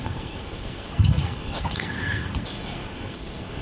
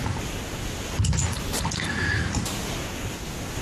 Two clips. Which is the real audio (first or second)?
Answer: second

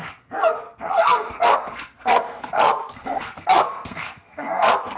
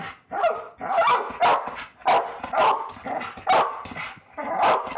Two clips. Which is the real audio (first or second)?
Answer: second